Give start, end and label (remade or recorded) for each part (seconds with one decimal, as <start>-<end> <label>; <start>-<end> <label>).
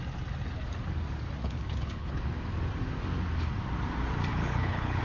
0.0-1.4 recorded; 1.4-2.2 remade; 2.2-4.3 recorded; 4.3-5.0 remade